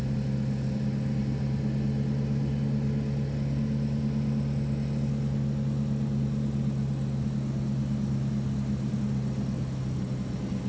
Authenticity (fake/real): real